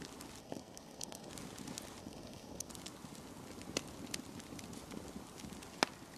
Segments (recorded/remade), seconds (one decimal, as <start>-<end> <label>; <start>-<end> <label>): 0.0-0.4 recorded; 0.4-1.3 remade; 1.3-2.0 recorded; 2.0-2.7 remade; 2.7-6.2 recorded